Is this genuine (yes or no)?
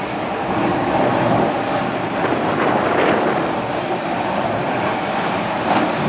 yes